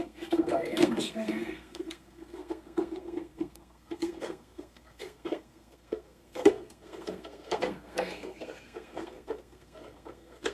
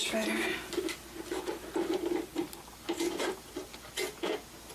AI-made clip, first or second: first